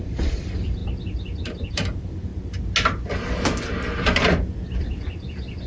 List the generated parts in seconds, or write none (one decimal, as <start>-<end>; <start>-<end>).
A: 0.0-0.8; 1.7-2.3